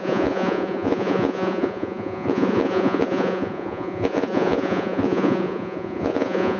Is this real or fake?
fake